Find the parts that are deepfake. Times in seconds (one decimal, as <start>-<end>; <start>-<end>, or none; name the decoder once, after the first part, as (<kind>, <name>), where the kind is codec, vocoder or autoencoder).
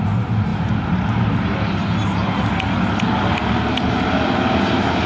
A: 0.0-1.8 (vocoder, BigVGAN v2); 4.1-5.1